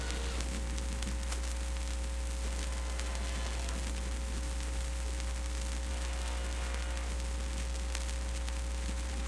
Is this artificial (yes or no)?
no